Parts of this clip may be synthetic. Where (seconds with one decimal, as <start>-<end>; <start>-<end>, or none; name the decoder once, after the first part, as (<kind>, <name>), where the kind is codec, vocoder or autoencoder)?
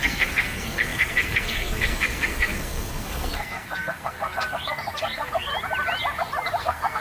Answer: 0.0-5.5 (codec, SNAC); 6.6-7.0